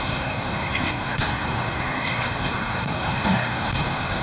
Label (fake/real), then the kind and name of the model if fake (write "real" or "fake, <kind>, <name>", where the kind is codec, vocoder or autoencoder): fake, codec, SNAC